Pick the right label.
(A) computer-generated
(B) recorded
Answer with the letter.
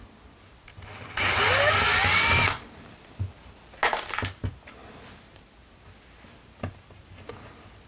B